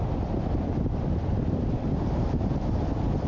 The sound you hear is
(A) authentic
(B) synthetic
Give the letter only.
B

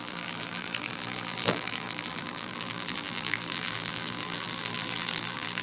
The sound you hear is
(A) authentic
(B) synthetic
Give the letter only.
B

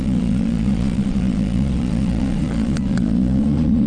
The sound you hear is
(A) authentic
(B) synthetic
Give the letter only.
B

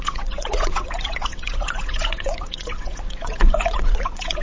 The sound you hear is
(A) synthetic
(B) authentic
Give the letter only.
A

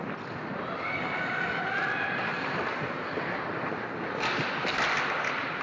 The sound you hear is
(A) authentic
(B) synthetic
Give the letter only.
A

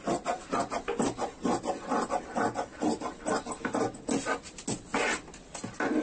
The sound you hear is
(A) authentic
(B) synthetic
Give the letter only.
A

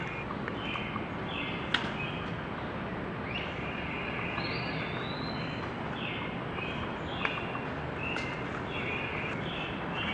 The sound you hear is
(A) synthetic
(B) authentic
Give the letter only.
B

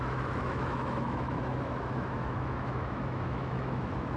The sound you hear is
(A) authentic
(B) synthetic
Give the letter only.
B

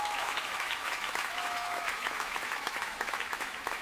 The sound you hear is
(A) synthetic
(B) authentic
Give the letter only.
A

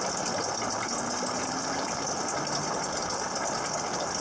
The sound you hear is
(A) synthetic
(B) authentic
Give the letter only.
B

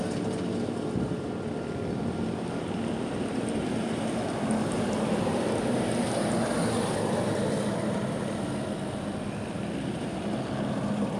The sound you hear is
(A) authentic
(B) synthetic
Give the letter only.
A